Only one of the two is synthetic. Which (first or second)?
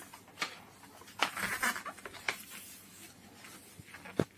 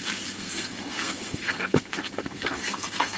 second